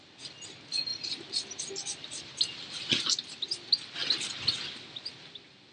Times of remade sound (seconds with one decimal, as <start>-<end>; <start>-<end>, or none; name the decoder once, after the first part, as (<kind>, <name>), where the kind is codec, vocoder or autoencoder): 0.9-3.3 (vocoder, BigVGAN v2)